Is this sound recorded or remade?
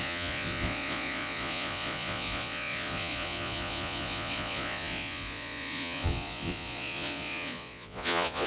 remade